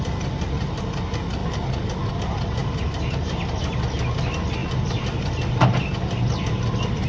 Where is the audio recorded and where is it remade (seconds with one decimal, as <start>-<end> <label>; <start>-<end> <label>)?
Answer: 0.0-2.6 recorded; 2.6-3.6 remade; 3.6-4.6 recorded; 4.6-5.8 remade; 5.8-7.1 recorded

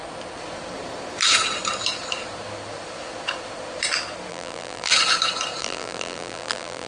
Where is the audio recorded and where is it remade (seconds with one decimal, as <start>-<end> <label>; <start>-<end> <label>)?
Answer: 0.0-4.3 recorded; 4.3-4.9 remade; 4.9-5.6 recorded; 5.6-6.9 remade

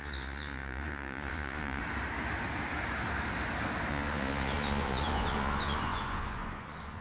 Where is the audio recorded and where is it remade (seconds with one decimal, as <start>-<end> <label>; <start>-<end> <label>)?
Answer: 0.0-1.8 remade; 1.8-3.9 recorded; 3.9-7.0 remade

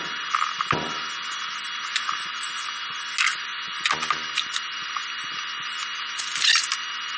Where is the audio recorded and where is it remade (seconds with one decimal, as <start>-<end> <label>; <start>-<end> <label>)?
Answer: 0.0-7.2 recorded

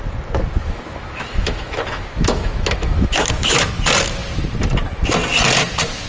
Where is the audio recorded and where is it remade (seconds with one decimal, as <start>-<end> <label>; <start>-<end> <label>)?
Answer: 0.0-0.6 recorded; 0.6-3.7 remade; 3.7-6.1 recorded

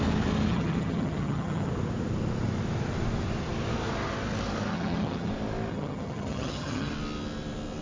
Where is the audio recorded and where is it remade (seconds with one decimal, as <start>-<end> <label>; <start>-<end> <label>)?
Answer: 0.0-0.5 recorded; 0.5-1.7 remade; 1.7-4.7 recorded; 4.7-5.3 remade; 5.3-5.7 recorded; 5.7-6.9 remade; 6.9-7.8 recorded

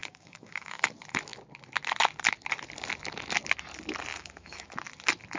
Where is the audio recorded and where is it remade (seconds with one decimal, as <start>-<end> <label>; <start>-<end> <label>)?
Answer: 0.0-0.8 remade; 0.8-4.1 recorded; 4.1-4.7 remade; 4.7-5.4 recorded